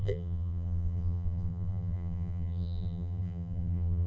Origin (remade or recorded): remade